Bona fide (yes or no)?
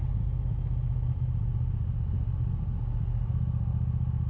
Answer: yes